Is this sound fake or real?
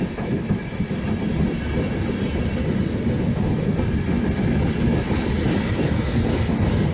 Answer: real